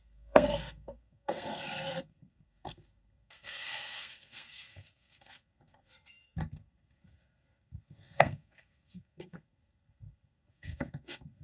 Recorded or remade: remade